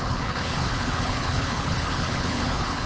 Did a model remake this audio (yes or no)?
yes